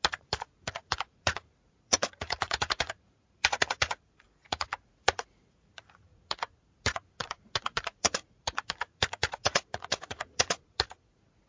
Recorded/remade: remade